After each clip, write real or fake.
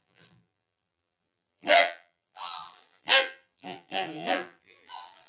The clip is fake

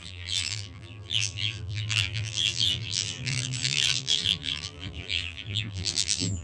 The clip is fake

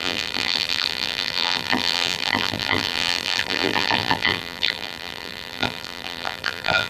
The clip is fake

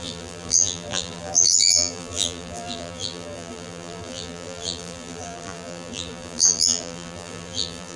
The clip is fake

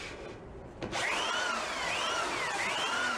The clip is real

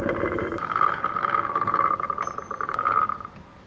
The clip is fake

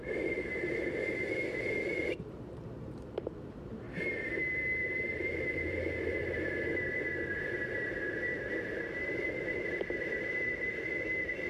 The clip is fake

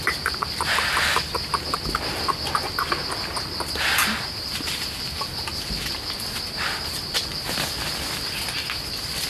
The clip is fake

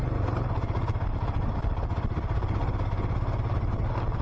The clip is real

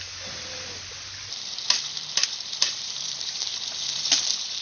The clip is fake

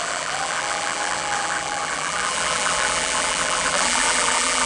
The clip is fake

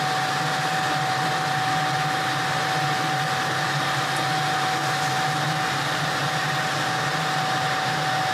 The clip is real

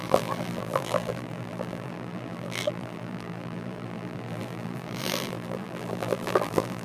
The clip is fake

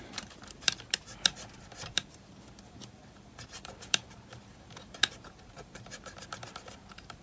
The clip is fake